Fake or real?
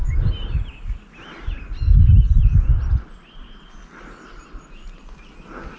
real